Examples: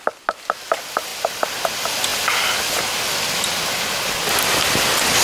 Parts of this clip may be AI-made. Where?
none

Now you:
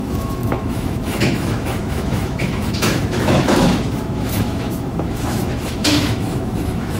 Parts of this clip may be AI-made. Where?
0.0-7.0 (autoencoder, DAC-VAE)